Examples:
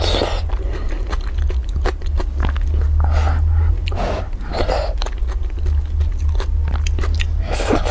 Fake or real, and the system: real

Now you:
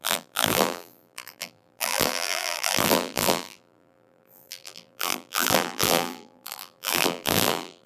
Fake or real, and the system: fake, vocoder, BigVGAN v2